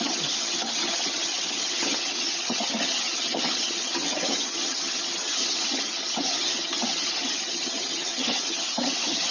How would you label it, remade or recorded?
remade